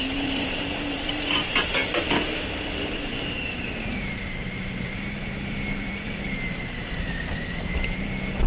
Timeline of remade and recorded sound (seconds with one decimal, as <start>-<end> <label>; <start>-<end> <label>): 0.0-8.5 remade